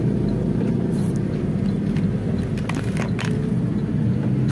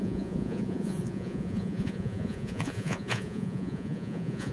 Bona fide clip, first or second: first